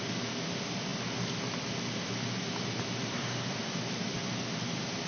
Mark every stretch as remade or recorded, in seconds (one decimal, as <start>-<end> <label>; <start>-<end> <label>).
0.0-5.1 recorded